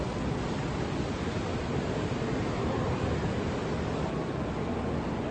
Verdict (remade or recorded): recorded